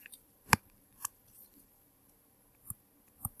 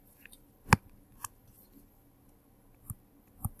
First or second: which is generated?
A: first